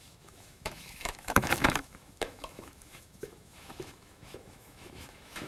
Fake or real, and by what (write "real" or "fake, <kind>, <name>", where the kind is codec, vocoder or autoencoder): fake, autoencoder, DAC-VAE